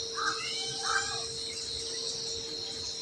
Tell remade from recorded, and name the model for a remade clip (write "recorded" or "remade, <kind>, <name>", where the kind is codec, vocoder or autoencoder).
recorded